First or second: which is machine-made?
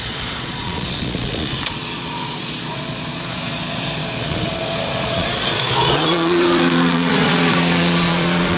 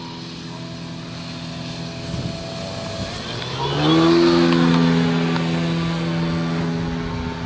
first